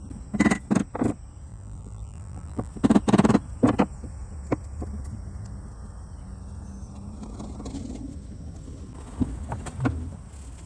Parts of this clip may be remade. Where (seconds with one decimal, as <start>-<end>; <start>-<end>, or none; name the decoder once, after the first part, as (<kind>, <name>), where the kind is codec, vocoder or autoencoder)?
1.5-2.7 (vocoder, BigVGAN v2)